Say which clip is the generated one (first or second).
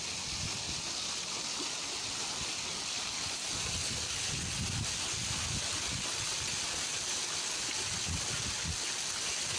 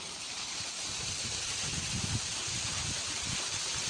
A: second